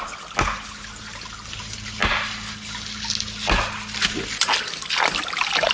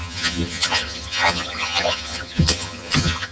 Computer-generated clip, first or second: second